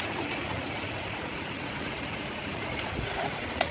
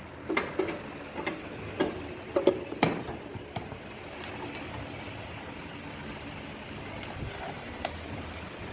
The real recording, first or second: second